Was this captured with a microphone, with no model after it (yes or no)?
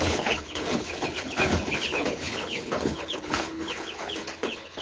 no